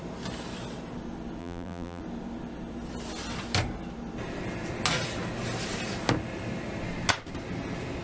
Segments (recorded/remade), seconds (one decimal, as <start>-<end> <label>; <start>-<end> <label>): 0.0-1.4 recorded; 1.4-2.0 remade; 2.0-8.0 recorded

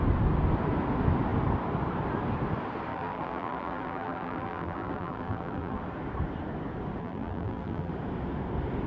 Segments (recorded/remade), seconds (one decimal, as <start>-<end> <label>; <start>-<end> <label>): 0.0-2.9 recorded; 2.9-5.8 remade; 5.8-7.0 recorded; 7.0-7.9 remade; 7.9-8.9 recorded

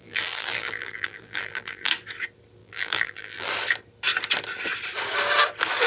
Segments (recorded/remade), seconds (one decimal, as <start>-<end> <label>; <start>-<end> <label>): 0.0-1.9 remade; 1.9-2.6 recorded; 2.6-3.5 remade; 3.5-5.9 recorded

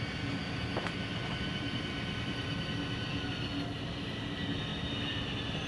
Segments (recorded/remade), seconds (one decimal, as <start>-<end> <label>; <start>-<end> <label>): 0.0-1.1 recorded; 1.1-2.6 remade; 2.6-5.7 recorded

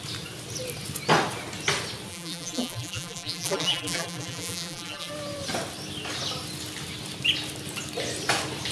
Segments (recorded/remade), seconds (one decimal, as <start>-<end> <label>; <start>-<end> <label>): 0.0-2.1 recorded; 2.1-5.1 remade; 5.1-8.7 recorded

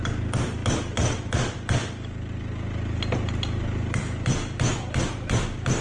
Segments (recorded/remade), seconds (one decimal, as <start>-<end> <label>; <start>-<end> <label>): 0.0-5.8 recorded

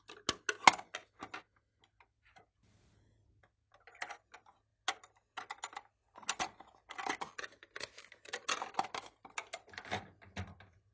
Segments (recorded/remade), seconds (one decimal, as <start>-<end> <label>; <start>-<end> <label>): 0.0-10.9 recorded